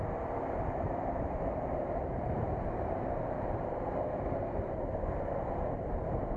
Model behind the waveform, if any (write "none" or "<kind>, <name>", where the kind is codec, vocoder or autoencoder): vocoder, BigVGAN v2